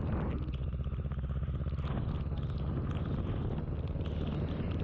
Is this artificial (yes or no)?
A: no